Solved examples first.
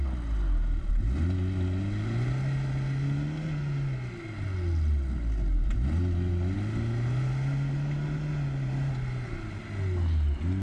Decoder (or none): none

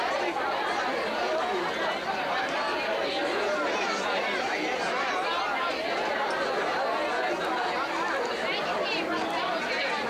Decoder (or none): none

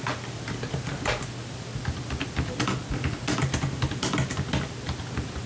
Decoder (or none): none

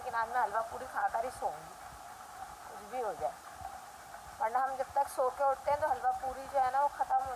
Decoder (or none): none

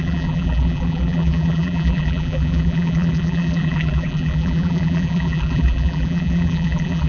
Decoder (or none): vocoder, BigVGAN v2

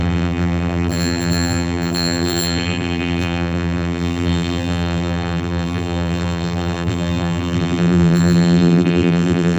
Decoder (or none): vocoder, BigVGAN v2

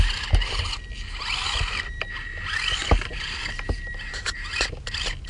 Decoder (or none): none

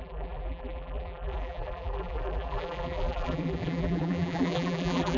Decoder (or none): vocoder, BigVGAN v2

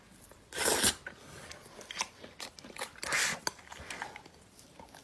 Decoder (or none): none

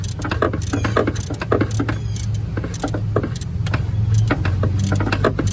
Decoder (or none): none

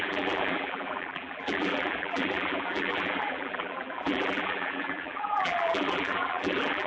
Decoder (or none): vocoder, BigVGAN v2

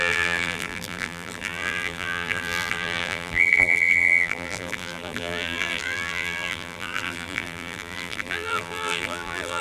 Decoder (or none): vocoder, BigVGAN v2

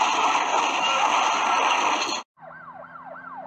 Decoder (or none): none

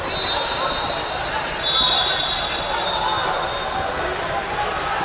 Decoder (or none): none